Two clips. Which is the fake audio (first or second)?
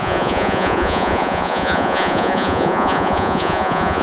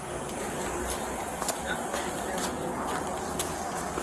first